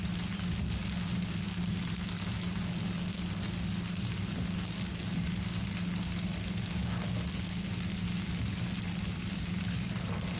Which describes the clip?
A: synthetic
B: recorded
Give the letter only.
B